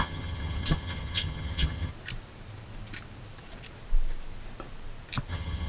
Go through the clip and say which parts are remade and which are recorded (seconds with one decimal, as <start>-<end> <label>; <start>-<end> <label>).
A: 0.0-1.9 remade; 1.9-5.3 recorded; 5.3-5.7 remade